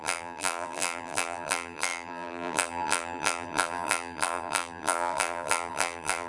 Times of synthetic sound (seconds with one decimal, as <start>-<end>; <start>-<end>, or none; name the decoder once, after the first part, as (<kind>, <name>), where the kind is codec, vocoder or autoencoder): 0.0-6.3 (vocoder, BigVGAN v2)